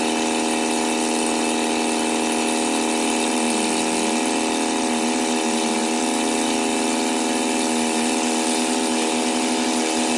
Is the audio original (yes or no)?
yes